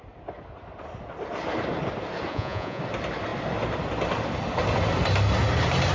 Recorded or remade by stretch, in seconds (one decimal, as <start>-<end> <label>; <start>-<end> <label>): 0.0-2.3 recorded; 2.3-2.8 remade; 2.8-5.9 recorded